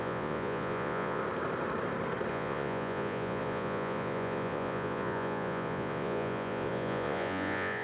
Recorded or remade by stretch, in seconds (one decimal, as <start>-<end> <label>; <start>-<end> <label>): 0.0-1.2 remade; 1.2-2.3 recorded; 2.3-7.8 remade